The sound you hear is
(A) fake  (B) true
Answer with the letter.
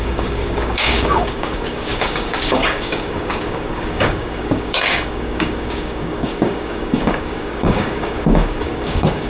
A